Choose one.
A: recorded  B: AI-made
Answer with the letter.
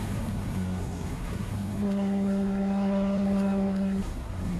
B